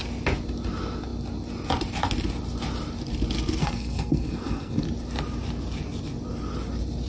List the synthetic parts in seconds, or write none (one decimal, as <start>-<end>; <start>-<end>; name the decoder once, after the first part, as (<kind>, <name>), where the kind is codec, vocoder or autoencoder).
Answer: 3.6-4.8 (codec, SNAC)